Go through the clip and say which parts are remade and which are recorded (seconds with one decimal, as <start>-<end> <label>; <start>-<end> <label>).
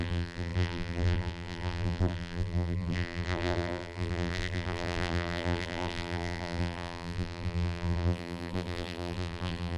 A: 0.0-9.8 remade